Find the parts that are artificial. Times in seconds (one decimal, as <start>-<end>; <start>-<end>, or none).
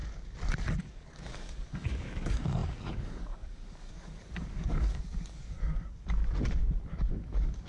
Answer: 0.8-6.2; 7.1-7.7